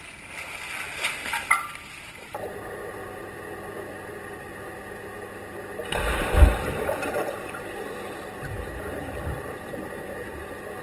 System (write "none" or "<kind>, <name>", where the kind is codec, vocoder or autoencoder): none